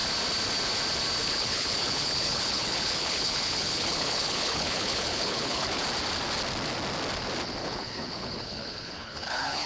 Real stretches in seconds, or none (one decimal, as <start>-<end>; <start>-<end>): 0.0-1.2; 5.8-7.6